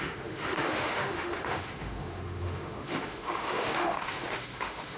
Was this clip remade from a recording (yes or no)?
yes